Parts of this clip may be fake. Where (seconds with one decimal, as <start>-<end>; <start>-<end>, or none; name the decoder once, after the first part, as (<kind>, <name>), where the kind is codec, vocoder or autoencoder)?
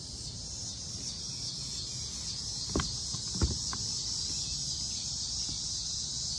none